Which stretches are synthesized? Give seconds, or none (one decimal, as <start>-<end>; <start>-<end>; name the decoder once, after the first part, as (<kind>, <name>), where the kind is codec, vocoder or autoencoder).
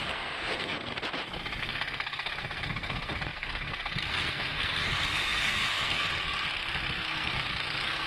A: 0.0-0.9 (codec, SNAC); 1.6-8.1